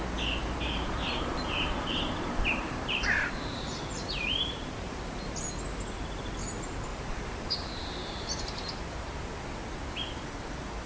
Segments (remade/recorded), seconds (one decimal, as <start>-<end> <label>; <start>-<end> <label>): 0.0-0.4 recorded; 0.4-5.5 remade; 5.5-6.9 recorded; 6.9-8.4 remade; 8.4-10.9 recorded